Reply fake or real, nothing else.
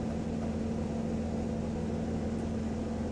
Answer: real